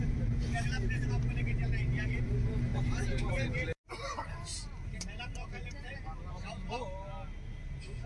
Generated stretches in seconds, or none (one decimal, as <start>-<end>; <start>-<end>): 0.0-5.8